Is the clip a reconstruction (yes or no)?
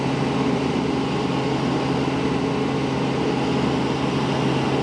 no